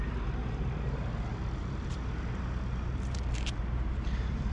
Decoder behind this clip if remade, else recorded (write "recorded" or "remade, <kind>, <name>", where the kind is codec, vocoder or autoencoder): remade, vocoder, BigVGAN v2